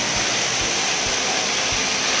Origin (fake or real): real